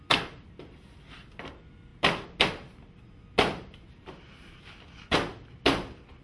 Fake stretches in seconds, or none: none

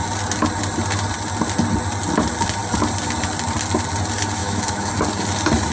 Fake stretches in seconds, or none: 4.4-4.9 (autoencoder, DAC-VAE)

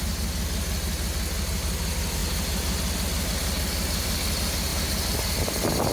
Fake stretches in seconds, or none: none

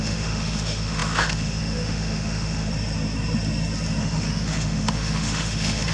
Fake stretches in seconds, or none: 0.0-2.7 (autoencoder, DAC-VAE); 4.0-5.9